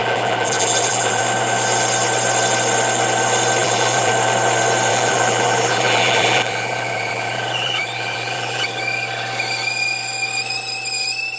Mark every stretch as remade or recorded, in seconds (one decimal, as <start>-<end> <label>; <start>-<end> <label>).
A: 0.0-1.2 remade; 1.2-3.6 recorded; 3.6-4.1 remade; 4.1-4.9 recorded; 4.9-8.8 remade; 8.8-11.4 recorded